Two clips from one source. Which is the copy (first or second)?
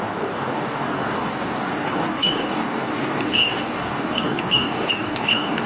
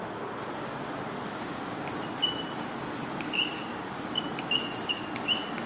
first